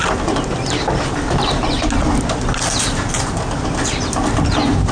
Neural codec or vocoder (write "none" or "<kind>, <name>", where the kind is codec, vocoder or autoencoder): none